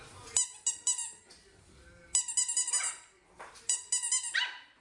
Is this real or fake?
real